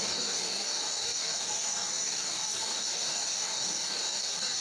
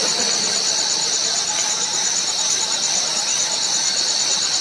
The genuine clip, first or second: second